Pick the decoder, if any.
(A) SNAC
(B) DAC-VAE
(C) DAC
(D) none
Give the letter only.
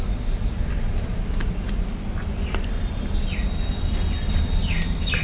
D